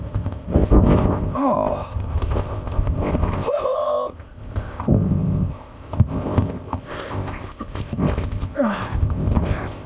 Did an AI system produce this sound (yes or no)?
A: yes